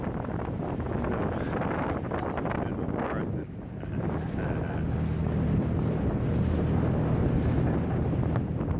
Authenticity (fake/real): real